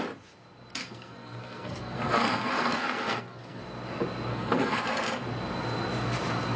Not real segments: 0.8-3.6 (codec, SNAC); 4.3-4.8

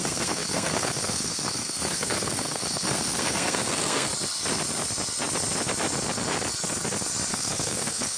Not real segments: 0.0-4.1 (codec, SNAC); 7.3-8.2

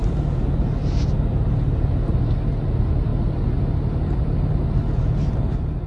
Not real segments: none

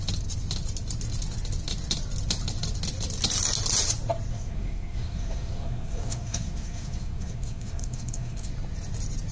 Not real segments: 4.3-8.5 (codec, SNAC)